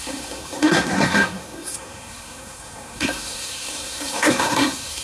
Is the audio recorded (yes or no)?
no